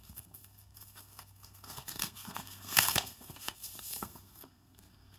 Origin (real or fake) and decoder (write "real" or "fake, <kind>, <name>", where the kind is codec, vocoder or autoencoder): fake, codec, SNAC